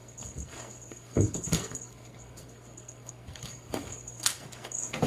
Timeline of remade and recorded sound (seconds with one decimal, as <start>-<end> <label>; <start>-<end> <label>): 0.0-5.1 remade

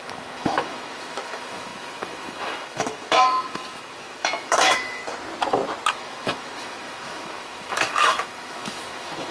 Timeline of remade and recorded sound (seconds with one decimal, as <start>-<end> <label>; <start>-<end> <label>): 0.0-5.0 remade; 5.0-5.9 recorded; 5.9-9.3 remade

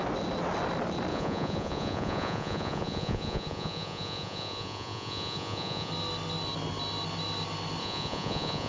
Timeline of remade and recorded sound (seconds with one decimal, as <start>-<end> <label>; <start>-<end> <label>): 0.0-1.1 recorded; 1.1-5.9 remade; 5.9-7.8 recorded; 7.8-8.7 remade